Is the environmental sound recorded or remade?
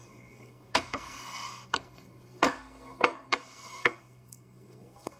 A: remade